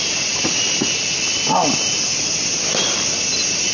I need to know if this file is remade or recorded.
recorded